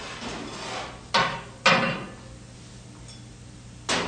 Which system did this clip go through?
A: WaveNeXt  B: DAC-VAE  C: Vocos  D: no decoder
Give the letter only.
D